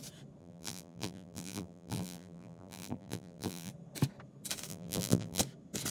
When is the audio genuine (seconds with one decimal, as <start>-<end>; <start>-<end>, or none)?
0.0-0.4; 3.7-4.7; 5.4-5.9